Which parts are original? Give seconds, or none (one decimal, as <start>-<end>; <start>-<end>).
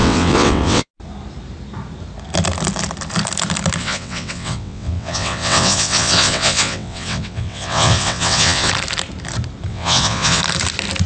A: 0.9-3.8; 8.7-9.7; 10.4-11.1